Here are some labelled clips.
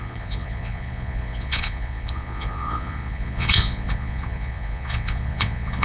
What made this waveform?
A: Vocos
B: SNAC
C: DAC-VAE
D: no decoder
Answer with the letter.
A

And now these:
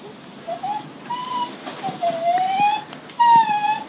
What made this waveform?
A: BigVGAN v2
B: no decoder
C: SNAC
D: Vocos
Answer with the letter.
B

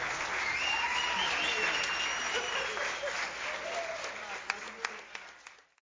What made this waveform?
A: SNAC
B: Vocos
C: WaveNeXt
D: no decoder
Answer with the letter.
D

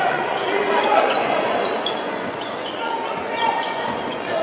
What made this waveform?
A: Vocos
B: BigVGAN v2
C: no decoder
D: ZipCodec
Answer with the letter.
A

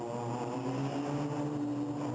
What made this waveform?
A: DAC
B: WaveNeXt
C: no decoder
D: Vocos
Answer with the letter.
C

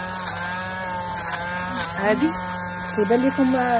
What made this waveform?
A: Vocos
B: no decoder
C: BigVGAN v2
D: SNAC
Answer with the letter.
B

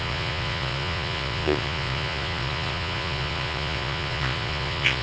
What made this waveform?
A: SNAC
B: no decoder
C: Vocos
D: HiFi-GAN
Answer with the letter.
C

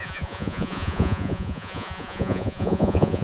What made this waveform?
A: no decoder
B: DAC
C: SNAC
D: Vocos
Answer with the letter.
D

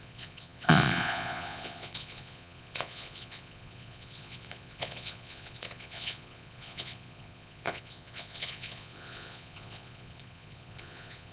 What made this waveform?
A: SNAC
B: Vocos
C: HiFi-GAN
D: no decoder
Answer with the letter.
B